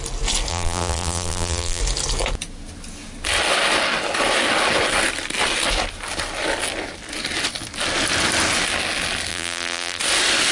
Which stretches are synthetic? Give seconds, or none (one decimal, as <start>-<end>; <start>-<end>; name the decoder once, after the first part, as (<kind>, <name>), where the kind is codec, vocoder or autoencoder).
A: 0.5-1.8 (vocoder, BigVGAN v2); 9.3-10.0